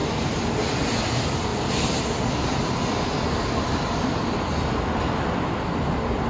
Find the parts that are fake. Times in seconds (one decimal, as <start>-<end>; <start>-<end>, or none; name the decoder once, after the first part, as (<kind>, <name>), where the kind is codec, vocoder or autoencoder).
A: 0.0-0.7 (vocoder, BigVGAN v2)